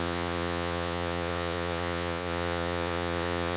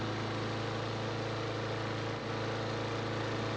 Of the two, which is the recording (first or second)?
second